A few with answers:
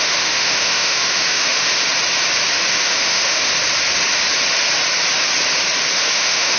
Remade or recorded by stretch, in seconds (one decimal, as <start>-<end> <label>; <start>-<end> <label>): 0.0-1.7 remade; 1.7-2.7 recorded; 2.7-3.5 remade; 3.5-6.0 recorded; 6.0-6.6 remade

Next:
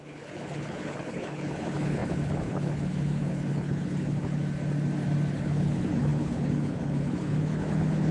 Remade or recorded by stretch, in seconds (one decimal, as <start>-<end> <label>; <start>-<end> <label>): 0.0-4.4 remade; 4.4-5.3 recorded; 5.3-8.1 remade

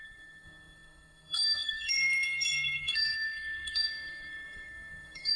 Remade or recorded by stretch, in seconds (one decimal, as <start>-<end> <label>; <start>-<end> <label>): 0.0-5.4 remade